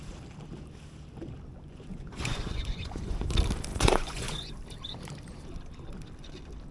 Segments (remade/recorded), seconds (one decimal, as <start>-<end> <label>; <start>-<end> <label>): 0.0-1.5 recorded; 1.5-3.3 remade; 3.3-3.7 recorded; 3.7-4.5 remade; 4.5-6.7 recorded